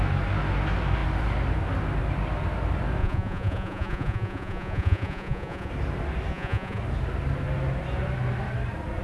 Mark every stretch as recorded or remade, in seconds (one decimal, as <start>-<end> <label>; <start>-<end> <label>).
0.0-3.0 recorded; 3.0-5.7 remade; 5.7-6.3 recorded; 6.3-6.8 remade; 6.8-9.0 recorded